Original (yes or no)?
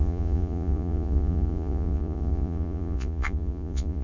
no